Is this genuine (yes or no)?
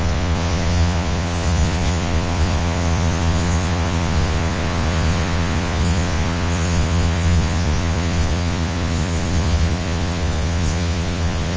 no